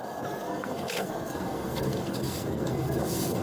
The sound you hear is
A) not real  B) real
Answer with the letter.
A